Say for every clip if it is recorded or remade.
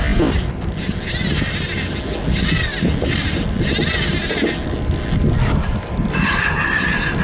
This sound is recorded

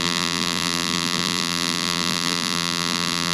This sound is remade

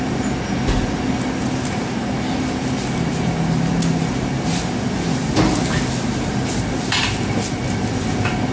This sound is recorded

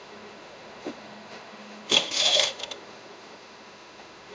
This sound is remade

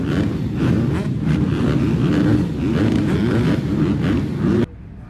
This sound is recorded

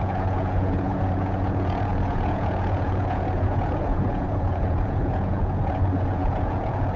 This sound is remade